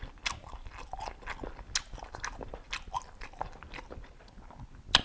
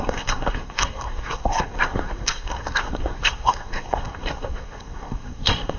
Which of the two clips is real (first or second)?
first